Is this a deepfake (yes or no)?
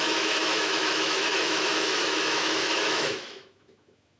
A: yes